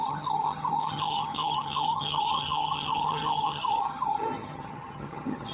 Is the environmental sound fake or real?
fake